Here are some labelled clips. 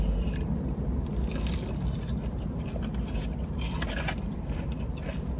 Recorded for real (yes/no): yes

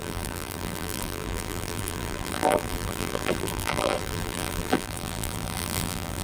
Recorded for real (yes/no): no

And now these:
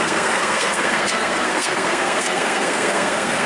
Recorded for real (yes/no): no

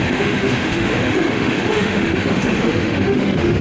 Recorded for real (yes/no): no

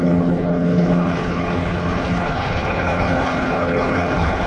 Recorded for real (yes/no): no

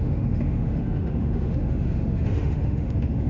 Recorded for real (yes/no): no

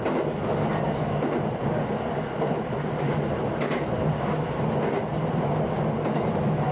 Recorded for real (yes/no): yes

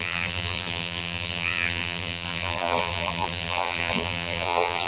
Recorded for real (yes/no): no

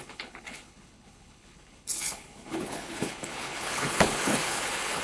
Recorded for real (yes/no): no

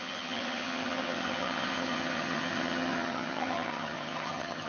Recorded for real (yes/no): no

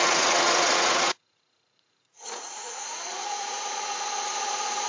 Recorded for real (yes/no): no